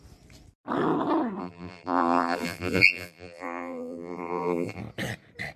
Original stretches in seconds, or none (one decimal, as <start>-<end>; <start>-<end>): 0.0-1.4; 4.8-5.6